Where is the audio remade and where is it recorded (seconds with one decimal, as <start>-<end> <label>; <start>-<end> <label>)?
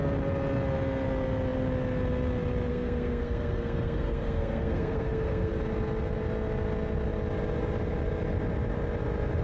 0.0-2.7 recorded; 2.7-5.5 remade; 5.5-9.4 recorded